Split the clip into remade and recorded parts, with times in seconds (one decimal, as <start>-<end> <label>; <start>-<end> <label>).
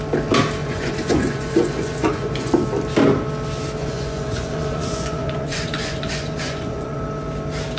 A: 0.0-0.6 recorded; 0.6-2.5 remade; 2.5-3.8 recorded; 3.8-7.0 remade; 7.0-7.8 recorded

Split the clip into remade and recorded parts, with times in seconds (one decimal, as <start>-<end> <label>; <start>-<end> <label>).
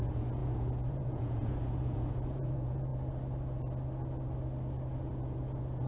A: 0.0-2.9 remade; 2.9-5.1 recorded; 5.1-5.9 remade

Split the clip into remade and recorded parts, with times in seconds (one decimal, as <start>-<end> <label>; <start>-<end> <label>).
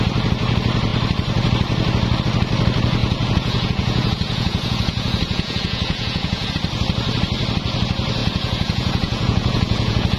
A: 0.0-3.0 recorded; 3.0-6.5 remade; 6.5-8.2 recorded; 8.2-10.2 remade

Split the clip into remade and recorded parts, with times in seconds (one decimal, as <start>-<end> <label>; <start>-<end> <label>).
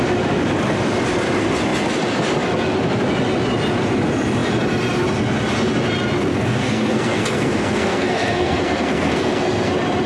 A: 0.0-6.3 recorded; 6.3-9.7 remade; 9.7-10.1 recorded